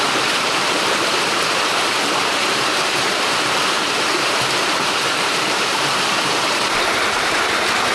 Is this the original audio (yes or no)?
no